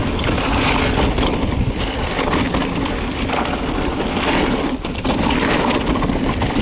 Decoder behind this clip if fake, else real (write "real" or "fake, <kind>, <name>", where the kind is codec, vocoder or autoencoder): real